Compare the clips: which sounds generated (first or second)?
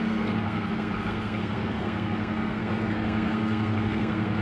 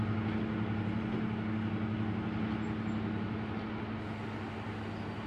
first